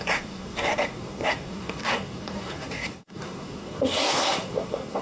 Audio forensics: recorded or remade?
remade